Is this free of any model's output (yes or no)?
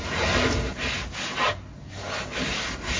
yes